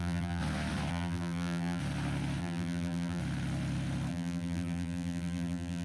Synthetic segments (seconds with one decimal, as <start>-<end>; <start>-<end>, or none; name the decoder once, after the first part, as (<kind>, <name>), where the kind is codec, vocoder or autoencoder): 0.0-0.4 (vocoder, BigVGAN v2); 0.9-1.8; 2.4-3.2; 4.1-5.8